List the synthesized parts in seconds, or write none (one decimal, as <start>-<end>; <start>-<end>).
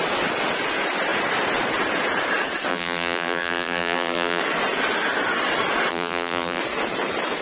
2.7-4.4; 5.9-6.6